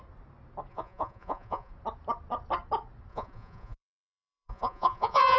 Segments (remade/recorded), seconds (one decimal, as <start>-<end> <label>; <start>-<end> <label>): 0.0-0.7 recorded; 0.7-1.7 remade; 1.7-3.1 recorded; 3.1-5.4 remade